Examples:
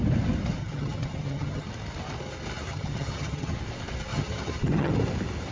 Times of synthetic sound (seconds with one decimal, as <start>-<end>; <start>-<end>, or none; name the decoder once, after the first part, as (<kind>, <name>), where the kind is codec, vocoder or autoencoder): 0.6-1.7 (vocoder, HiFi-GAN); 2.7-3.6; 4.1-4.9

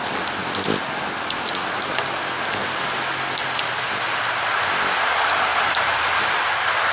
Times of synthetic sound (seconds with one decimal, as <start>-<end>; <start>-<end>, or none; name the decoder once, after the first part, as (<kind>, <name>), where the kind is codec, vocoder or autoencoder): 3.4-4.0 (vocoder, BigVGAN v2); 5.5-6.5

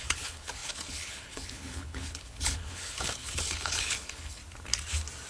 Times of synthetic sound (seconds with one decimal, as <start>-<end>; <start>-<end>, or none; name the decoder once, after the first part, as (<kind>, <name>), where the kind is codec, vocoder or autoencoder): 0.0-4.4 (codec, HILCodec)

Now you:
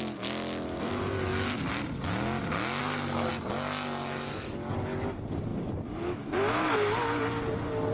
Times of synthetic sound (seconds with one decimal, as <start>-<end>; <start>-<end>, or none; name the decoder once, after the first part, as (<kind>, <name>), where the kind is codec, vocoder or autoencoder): 2.8-3.3 (codec, SNAC)

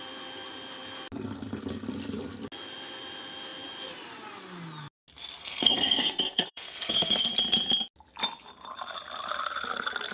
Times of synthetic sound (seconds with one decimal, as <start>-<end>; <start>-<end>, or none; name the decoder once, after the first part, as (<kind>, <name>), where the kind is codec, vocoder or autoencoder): 5.4-7.3 (codec, SNAC)